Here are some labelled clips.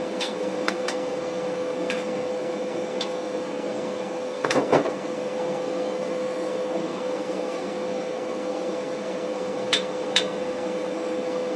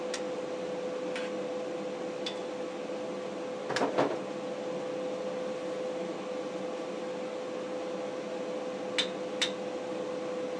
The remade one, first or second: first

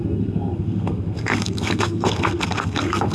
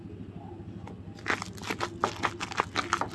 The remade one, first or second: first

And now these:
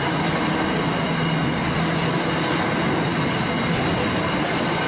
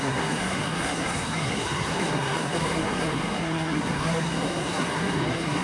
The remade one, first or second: second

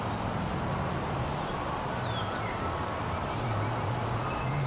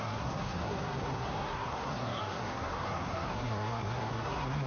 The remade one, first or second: second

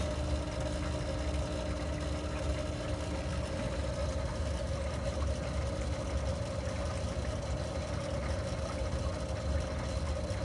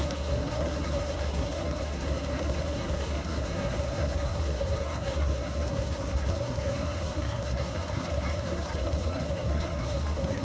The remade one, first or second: second